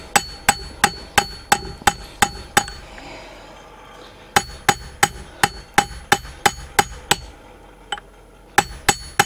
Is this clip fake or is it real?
real